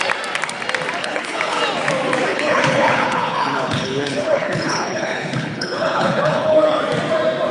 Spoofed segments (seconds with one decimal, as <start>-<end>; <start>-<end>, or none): 1.0-1.6; 2.3-6.8